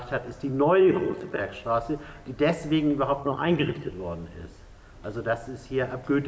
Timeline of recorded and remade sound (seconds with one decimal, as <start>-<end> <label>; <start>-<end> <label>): 0.0-0.8 recorded; 0.8-1.4 remade; 1.4-3.2 recorded; 3.2-3.9 remade; 3.9-6.3 recorded